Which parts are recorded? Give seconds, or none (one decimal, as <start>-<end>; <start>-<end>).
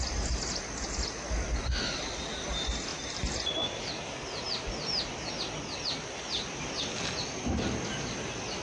0.0-8.6